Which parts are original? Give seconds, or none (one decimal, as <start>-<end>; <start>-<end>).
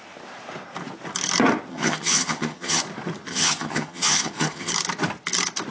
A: 0.0-1.7; 2.8-3.3; 4.7-5.7